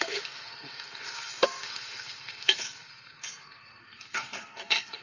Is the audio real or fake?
fake